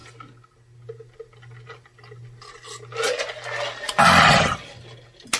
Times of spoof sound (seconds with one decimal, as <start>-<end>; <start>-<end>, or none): none